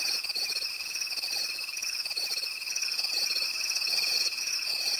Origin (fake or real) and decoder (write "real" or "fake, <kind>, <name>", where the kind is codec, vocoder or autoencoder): fake, autoencoder, DAC-VAE